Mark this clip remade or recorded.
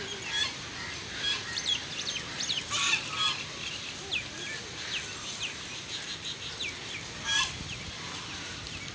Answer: recorded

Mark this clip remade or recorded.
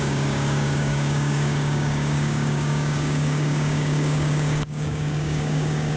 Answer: remade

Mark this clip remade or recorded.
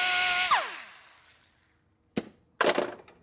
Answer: recorded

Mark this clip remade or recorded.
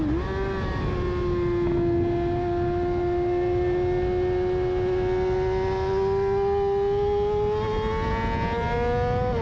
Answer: recorded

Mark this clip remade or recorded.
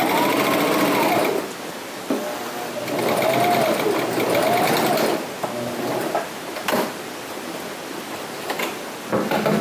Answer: recorded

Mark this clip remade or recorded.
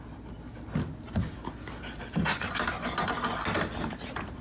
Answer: recorded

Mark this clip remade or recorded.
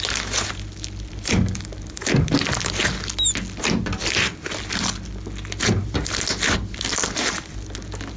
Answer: recorded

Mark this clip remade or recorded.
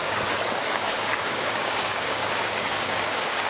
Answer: remade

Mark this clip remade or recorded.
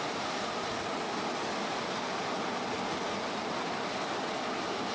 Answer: recorded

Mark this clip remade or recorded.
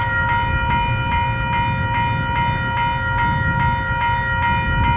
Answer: recorded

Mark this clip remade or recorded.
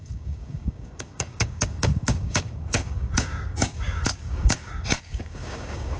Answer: remade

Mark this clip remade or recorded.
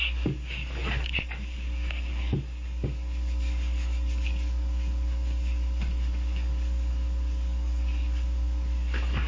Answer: remade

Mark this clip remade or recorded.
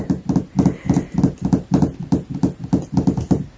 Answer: recorded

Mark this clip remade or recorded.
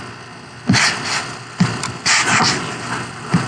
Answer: recorded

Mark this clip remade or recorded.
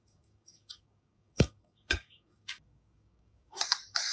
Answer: remade